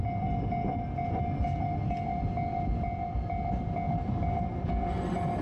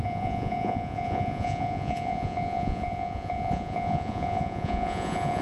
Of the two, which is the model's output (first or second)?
second